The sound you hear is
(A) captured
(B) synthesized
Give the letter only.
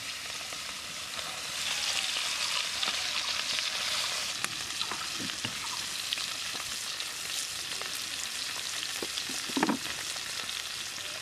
A